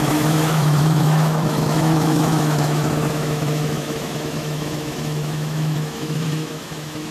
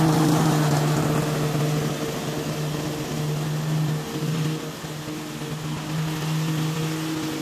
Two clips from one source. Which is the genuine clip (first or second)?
second